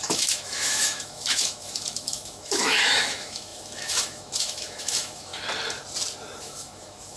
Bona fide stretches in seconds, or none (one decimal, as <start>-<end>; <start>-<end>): 5.3-6.4